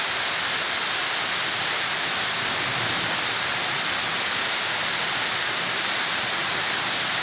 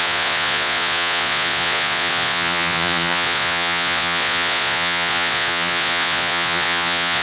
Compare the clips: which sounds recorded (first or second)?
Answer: first